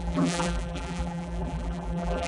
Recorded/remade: remade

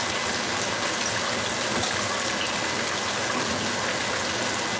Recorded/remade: recorded